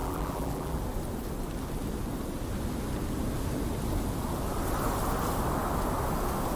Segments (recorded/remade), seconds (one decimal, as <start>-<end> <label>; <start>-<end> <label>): 0.0-0.8 remade; 0.8-6.6 recorded